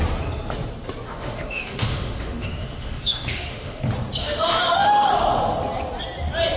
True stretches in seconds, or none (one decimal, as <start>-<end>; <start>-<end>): 0.0-1.1; 3.8-4.2; 5.1-6.6